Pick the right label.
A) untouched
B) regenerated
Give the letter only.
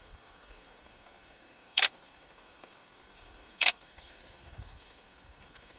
B